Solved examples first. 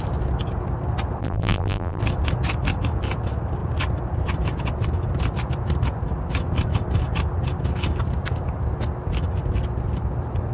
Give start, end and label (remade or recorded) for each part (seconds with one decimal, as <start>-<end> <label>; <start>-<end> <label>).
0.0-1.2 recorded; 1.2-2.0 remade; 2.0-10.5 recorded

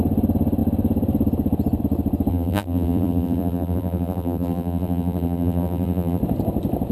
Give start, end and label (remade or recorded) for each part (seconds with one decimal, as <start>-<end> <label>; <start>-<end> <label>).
0.0-2.3 recorded; 2.3-6.2 remade; 6.2-6.9 recorded

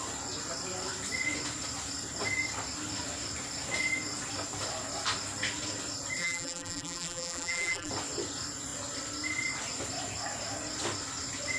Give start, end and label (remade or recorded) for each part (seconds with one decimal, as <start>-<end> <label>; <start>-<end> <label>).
0.0-6.2 recorded; 6.2-7.9 remade; 7.9-11.6 recorded